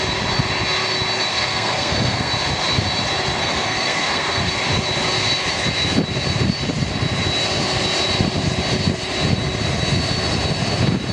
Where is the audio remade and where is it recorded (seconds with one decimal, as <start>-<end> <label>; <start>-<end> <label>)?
0.0-1.3 recorded; 1.3-2.3 remade; 2.3-3.4 recorded; 3.4-4.5 remade; 4.5-11.1 recorded